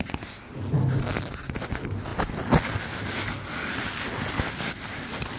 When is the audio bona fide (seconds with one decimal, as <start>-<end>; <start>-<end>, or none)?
0.0-5.4